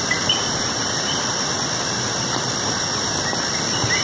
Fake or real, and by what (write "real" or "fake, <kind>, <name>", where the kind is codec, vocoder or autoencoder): real